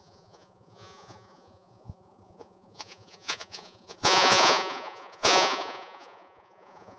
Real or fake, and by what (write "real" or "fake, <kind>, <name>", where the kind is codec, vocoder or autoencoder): fake, vocoder, Vocos